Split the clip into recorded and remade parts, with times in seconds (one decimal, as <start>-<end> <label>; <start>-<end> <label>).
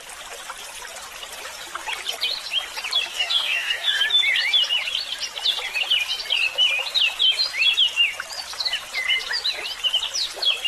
0.0-3.1 recorded; 3.1-4.0 remade; 4.0-10.7 recorded